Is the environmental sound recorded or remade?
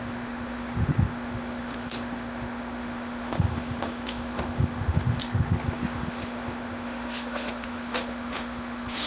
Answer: remade